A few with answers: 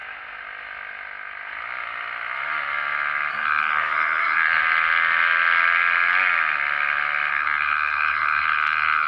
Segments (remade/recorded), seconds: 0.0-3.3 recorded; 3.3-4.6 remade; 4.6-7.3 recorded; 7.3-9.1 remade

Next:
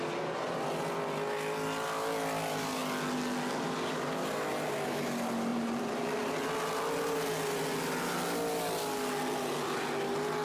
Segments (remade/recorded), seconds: 0.0-5.5 recorded; 5.5-6.3 remade; 6.3-10.4 recorded

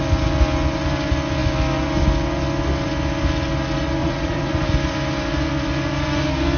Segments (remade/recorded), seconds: 0.0-4.0 recorded; 4.0-4.5 remade; 4.5-6.6 recorded

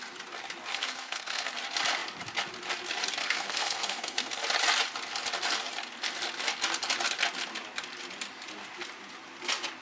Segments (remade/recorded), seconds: 0.0-0.7 recorded; 0.7-1.5 remade; 1.5-3.2 recorded; 3.2-4.4 remade; 4.4-9.8 recorded

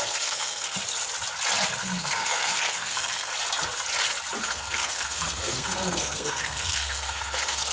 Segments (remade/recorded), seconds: 0.0-0.8 remade; 0.8-1.8 recorded; 1.8-3.3 remade; 3.3-4.4 recorded; 4.4-7.7 remade

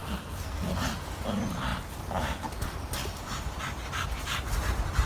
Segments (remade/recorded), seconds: 0.0-0.7 remade; 0.7-5.1 recorded